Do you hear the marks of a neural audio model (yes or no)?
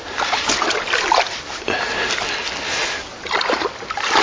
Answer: no